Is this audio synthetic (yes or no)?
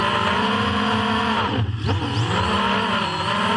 no